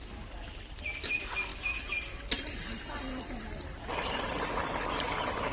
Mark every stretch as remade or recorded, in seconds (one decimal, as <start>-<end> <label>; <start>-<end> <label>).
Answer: 0.0-5.5 recorded